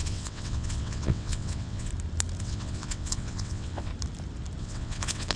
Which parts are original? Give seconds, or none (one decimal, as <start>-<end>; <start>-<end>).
1.9-2.4; 3.9-4.6